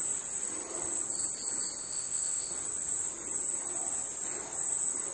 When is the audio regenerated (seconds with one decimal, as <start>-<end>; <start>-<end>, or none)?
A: 1.8-2.5